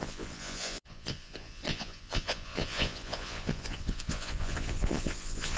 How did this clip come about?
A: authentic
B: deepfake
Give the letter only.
B